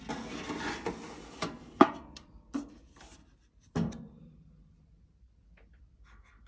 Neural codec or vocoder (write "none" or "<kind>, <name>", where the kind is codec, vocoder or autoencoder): none